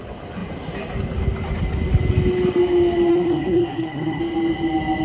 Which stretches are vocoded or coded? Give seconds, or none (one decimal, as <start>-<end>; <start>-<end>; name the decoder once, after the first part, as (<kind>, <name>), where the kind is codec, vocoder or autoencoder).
3.1-4.2 (codec, SNAC)